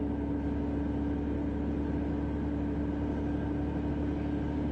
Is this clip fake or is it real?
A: real